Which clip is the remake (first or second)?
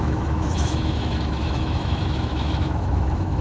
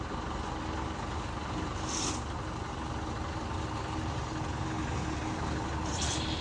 first